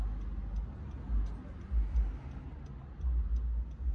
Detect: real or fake real